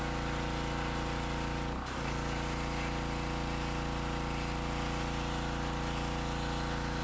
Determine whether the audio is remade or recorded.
recorded